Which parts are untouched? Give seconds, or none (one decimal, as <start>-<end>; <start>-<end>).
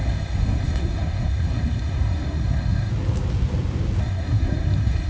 2.9-4.0